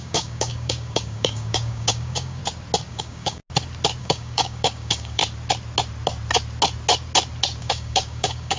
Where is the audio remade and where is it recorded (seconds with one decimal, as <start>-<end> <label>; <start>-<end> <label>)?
0.0-2.4 remade; 2.4-2.9 recorded; 2.9-3.4 remade; 3.4-4.0 recorded; 4.0-5.2 remade; 5.2-7.6 recorded; 7.6-8.6 remade